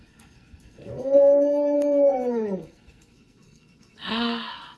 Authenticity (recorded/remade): remade